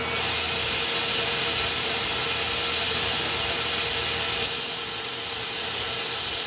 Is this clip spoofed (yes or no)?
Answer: no